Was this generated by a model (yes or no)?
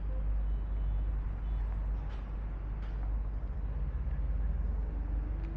no